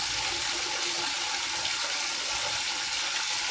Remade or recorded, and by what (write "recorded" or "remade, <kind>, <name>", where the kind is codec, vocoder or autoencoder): recorded